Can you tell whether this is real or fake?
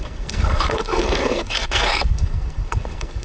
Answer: fake